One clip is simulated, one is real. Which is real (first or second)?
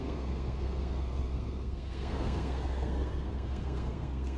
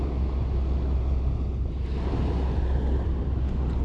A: second